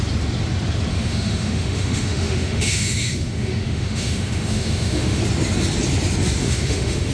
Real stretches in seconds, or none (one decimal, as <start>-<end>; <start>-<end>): 0.0-0.9; 5.2-6.4